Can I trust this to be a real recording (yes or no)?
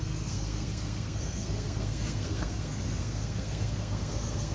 no